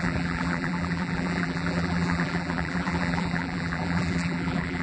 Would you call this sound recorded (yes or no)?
no